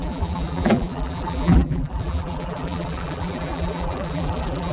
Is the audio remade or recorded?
remade